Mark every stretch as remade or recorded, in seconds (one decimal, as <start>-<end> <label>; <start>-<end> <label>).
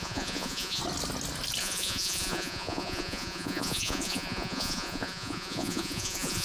0.0-0.8 remade; 0.8-1.6 recorded; 1.6-6.4 remade